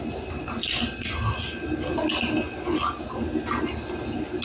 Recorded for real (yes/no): yes